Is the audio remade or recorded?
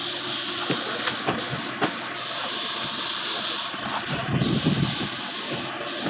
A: recorded